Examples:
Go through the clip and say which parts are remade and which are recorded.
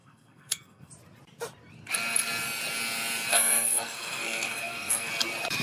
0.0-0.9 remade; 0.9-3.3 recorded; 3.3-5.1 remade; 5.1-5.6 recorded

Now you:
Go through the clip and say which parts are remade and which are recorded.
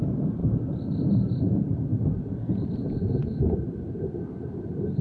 0.0-5.0 recorded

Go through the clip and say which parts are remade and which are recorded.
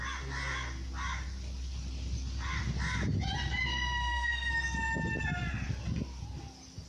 0.0-3.7 recorded; 3.7-4.5 remade; 4.5-6.9 recorded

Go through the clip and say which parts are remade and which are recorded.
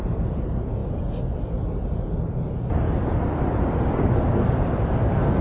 0.0-5.4 recorded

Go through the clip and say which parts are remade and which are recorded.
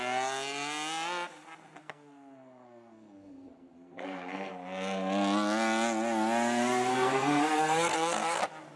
0.0-1.8 recorded; 1.8-4.5 remade; 4.5-6.9 recorded; 6.9-8.4 remade; 8.4-8.8 recorded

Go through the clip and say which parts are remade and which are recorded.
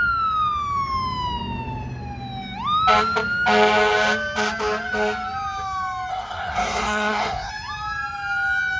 0.0-6.1 recorded; 6.1-7.5 remade; 7.5-8.8 recorded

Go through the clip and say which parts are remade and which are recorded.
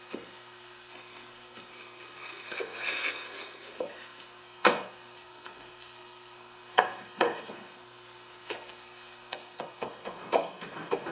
0.0-11.1 remade